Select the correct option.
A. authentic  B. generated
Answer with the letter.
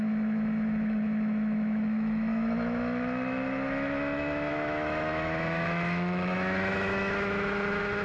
B